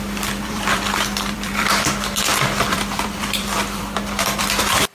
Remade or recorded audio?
remade